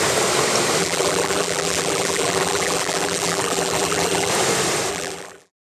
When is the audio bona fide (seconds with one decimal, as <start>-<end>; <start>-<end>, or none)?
0.0-0.8; 4.3-4.9